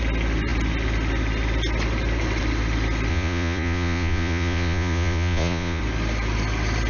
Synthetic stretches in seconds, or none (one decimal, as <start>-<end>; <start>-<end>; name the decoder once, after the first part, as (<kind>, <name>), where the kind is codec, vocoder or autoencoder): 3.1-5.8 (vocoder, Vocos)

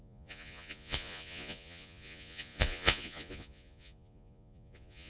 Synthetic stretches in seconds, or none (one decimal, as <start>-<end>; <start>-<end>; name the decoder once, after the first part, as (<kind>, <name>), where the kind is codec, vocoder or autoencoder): 0.0-5.1 (vocoder, Vocos)

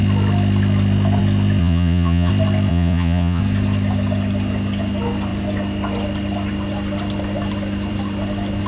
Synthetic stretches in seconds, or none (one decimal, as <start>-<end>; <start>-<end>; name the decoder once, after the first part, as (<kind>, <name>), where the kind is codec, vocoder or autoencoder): 1.6-2.3 (vocoder, Vocos); 2.7-3.4

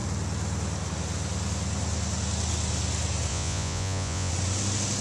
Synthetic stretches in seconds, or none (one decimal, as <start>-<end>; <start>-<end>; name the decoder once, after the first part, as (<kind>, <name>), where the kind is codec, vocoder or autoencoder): 3.3-4.3 (vocoder, Vocos)